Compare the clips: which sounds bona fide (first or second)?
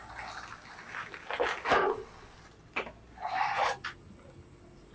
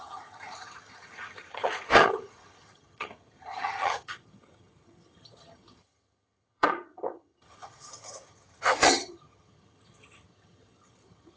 first